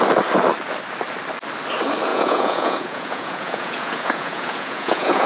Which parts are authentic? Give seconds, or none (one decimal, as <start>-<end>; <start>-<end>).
0.0-2.1